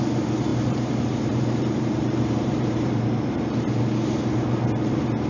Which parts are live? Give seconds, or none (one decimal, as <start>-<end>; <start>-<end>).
0.0-0.5; 3.7-5.3